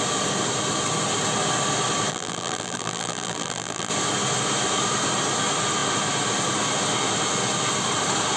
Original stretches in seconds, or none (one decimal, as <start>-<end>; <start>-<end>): 0.0-2.1; 3.9-8.4